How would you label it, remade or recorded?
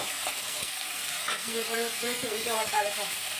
remade